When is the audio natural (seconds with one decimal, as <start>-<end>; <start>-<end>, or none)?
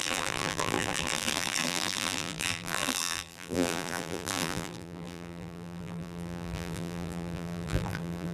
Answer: none